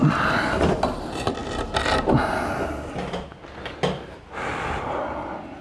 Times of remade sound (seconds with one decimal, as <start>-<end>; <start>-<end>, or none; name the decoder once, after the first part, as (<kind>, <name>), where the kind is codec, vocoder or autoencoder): none